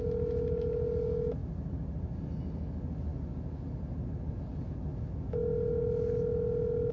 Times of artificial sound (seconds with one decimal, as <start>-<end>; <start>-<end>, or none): 1.4-2.2